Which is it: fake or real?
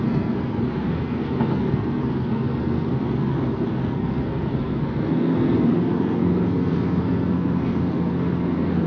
fake